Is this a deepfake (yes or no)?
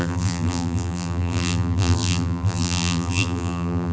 yes